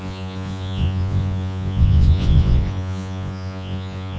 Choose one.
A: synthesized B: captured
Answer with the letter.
A